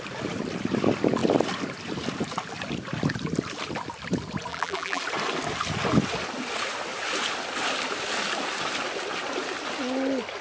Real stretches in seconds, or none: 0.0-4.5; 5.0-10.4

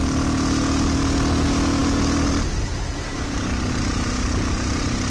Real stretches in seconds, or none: 0.0-5.1